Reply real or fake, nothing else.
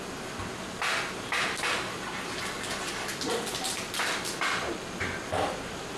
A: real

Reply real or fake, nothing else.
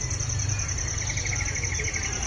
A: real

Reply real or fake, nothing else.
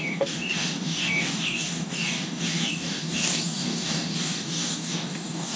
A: fake